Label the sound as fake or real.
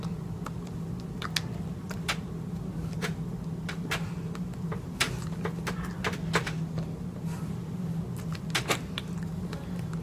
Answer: real